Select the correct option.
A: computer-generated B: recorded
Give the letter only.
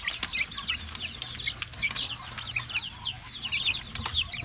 B